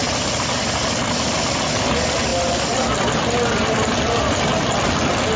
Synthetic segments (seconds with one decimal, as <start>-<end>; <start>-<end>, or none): none